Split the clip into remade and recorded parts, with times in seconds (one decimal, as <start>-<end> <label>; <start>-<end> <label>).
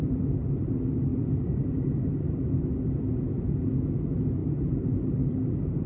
0.0-5.9 recorded